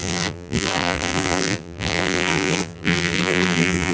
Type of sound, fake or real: fake